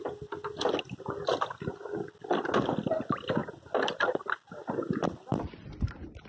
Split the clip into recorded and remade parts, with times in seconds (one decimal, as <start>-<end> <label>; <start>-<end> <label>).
0.0-6.3 recorded